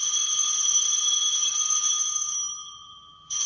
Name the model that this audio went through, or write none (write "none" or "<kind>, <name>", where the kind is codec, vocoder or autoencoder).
vocoder, BigVGAN v2